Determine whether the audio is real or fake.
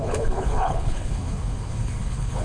fake